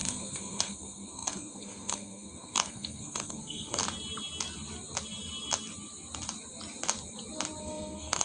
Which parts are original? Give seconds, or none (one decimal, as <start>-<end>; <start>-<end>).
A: 3.8-7.6